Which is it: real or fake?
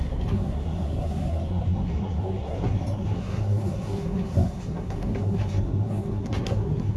fake